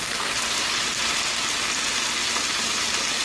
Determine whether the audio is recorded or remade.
recorded